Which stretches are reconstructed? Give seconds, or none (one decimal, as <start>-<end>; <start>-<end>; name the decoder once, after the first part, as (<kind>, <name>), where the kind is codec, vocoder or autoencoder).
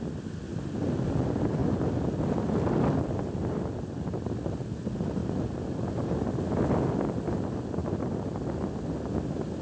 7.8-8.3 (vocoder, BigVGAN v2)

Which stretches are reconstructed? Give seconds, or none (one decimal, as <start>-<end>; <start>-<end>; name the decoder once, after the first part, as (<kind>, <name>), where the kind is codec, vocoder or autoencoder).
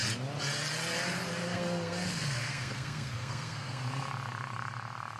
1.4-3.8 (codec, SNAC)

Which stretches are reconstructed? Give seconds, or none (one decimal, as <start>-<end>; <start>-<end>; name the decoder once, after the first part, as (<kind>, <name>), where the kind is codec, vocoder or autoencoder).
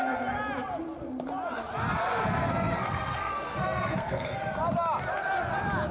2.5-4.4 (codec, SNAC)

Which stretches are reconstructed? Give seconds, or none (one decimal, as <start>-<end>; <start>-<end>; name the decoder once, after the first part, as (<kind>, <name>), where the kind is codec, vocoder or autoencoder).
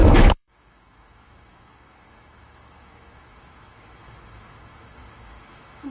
0.0-5.9 (autoencoder, DAC-VAE)